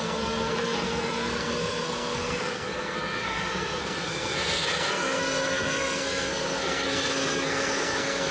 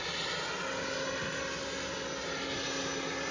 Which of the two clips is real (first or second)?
second